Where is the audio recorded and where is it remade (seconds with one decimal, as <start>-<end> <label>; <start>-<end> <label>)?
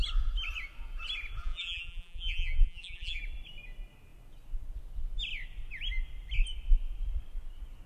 0.0-1.4 recorded; 1.4-3.2 remade; 3.2-7.9 recorded